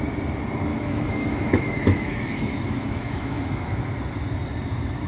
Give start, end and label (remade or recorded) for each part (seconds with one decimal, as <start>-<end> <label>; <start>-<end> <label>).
0.0-0.7 recorded; 0.7-3.8 remade; 3.8-5.1 recorded